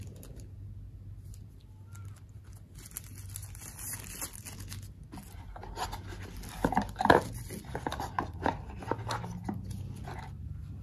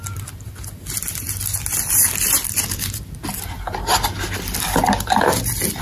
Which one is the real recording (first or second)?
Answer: first